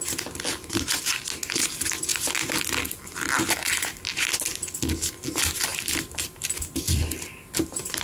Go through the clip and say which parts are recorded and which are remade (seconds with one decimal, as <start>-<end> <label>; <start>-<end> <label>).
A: 0.0-8.0 recorded